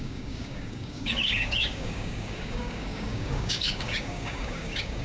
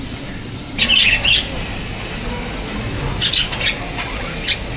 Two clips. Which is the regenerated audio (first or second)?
first